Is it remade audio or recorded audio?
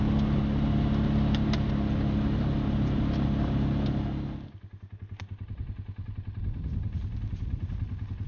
recorded